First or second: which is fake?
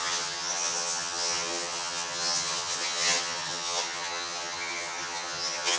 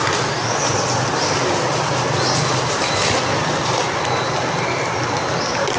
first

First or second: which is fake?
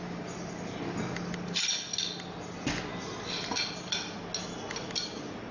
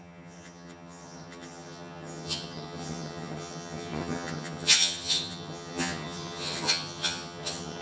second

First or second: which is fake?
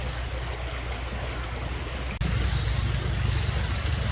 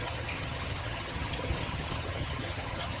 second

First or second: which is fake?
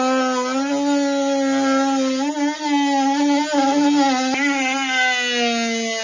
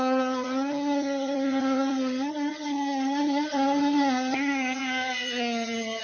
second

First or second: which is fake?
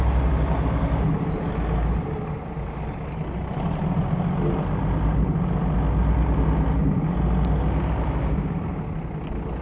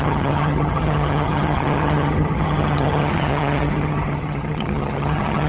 second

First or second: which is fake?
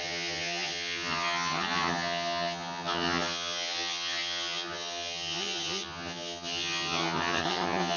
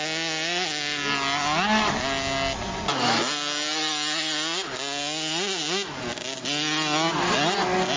first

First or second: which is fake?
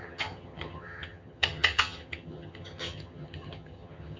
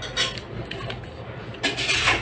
first